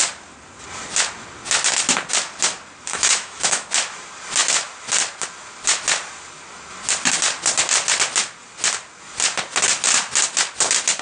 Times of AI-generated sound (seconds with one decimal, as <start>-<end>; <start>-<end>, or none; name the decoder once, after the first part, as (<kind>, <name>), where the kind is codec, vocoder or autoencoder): 2.9-3.7 (autoencoder, DAC-VAE)